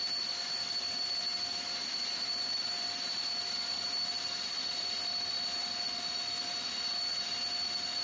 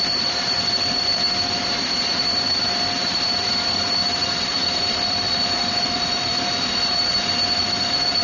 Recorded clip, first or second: first